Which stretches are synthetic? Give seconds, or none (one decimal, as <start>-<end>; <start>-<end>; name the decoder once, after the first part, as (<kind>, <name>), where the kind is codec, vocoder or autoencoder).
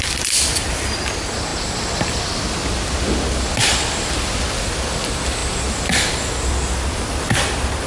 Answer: none